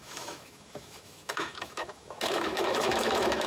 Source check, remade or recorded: remade